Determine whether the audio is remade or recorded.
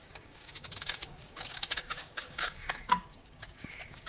remade